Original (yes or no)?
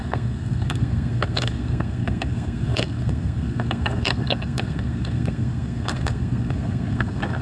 no